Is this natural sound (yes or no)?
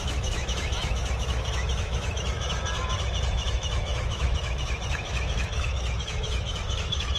no